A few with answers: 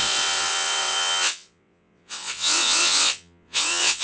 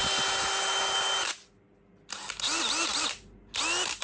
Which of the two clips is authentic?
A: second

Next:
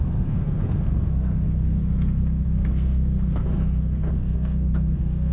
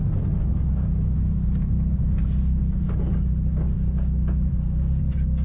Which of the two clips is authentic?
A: second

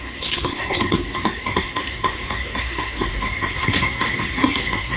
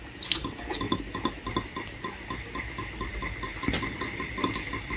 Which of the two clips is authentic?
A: second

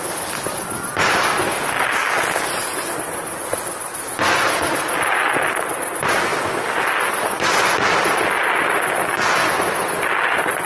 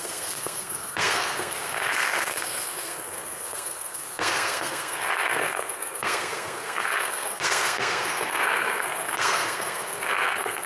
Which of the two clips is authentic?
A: first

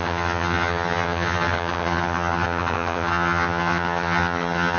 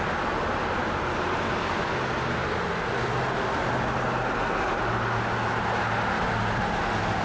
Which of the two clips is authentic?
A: second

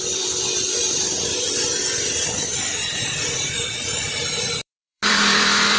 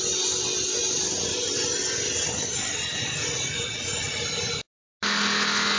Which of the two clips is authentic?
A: second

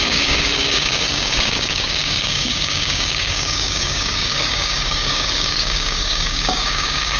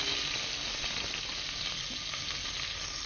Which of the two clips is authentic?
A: second